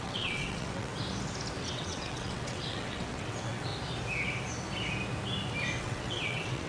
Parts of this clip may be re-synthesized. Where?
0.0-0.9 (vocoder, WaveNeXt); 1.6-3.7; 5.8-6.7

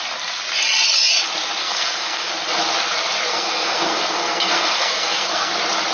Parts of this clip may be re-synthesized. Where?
1.6-2.3 (codec, SNAC); 3.3-5.5